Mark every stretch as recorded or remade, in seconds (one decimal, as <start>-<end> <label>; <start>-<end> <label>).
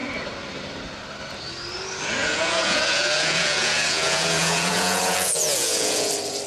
0.0-2.2 recorded; 2.2-6.1 remade; 6.1-6.5 recorded